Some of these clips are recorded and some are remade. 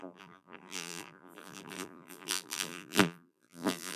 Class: remade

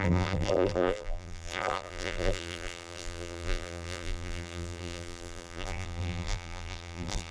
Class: remade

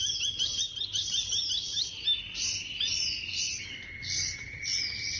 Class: recorded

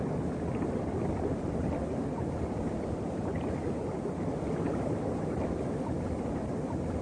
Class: remade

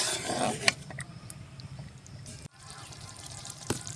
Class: remade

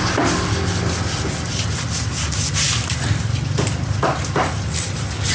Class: recorded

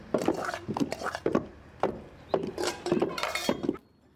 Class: remade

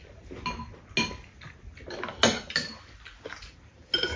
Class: recorded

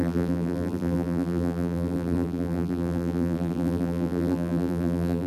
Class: remade